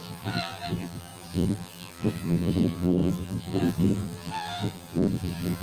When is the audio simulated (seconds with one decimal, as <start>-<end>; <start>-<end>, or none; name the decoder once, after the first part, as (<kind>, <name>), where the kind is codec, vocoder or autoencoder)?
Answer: 0.0-5.6 (vocoder, BigVGAN v2)